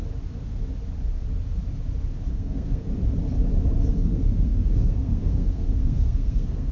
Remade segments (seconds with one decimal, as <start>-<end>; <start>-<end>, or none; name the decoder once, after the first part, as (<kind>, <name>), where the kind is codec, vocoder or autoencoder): 2.3-2.9 (codec, SNAC); 3.9-6.7